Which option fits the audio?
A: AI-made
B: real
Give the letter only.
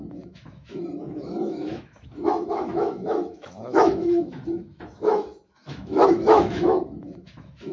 A